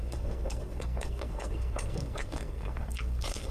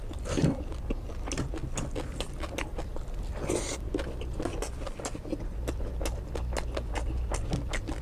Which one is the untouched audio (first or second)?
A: second